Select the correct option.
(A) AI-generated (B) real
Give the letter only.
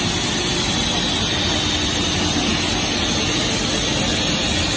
B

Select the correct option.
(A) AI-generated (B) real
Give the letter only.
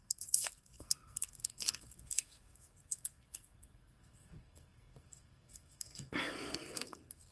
A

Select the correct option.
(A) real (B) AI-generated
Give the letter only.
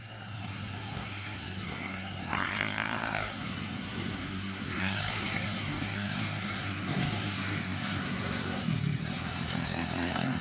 B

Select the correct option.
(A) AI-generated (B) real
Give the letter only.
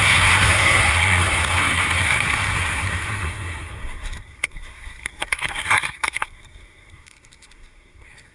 A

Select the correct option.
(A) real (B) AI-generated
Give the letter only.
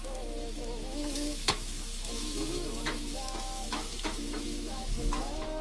B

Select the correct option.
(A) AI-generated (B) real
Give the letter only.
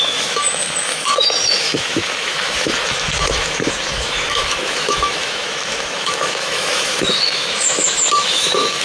A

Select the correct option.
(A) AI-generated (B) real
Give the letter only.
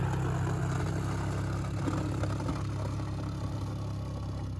B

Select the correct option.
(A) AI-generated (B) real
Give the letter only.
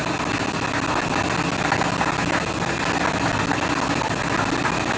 B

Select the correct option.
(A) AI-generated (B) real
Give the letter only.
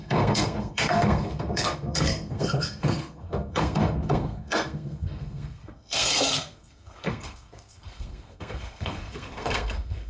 A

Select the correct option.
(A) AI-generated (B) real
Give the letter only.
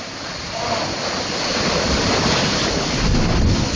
B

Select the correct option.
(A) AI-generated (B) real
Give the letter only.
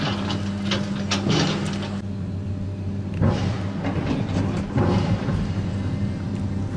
B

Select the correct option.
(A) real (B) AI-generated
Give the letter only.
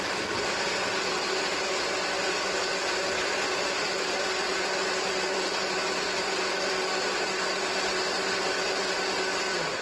A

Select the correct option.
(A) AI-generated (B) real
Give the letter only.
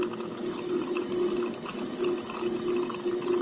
B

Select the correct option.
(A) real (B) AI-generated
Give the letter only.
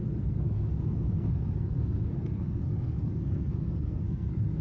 B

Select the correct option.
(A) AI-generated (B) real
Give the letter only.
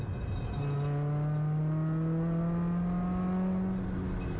B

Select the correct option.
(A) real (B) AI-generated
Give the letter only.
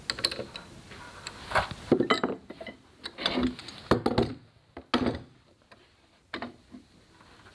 A